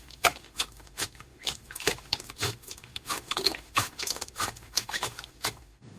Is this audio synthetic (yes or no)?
yes